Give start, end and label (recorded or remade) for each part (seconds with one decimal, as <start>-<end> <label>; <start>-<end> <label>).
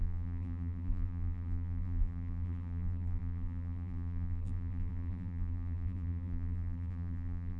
0.0-7.6 remade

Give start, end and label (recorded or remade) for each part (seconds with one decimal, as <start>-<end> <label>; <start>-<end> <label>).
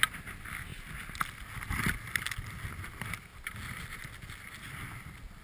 0.0-5.4 recorded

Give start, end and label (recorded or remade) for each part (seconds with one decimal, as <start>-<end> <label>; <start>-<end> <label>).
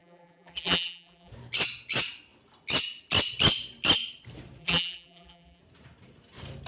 0.0-1.3 remade; 1.3-4.6 recorded; 4.6-5.6 remade; 5.6-6.7 recorded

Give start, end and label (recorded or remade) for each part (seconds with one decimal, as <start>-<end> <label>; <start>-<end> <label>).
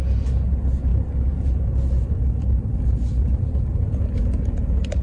0.0-0.9 recorded; 0.9-3.9 remade; 3.9-5.0 recorded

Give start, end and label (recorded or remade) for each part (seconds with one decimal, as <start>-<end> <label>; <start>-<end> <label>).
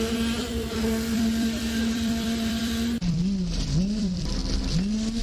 0.0-4.4 remade; 4.4-5.2 recorded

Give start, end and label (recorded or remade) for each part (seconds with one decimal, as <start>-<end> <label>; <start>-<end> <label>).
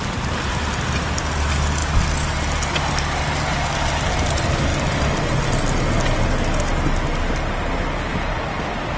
0.0-9.0 recorded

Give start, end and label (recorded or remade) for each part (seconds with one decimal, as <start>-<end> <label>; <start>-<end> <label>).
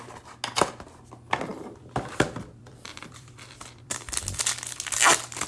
0.0-1.5 recorded; 1.5-4.4 remade; 4.4-5.5 recorded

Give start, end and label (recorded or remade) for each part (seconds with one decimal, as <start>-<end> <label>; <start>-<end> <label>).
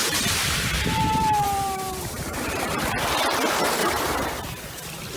0.0-2.8 remade; 2.8-3.8 recorded; 3.8-4.4 remade; 4.4-5.2 recorded